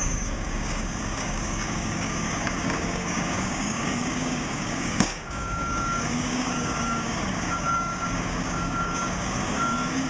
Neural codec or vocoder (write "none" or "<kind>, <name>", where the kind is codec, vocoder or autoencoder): codec, DAC